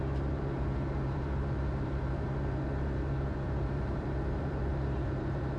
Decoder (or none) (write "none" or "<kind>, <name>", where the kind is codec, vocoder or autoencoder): vocoder, BigVGAN v2